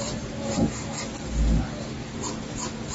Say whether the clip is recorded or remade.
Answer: recorded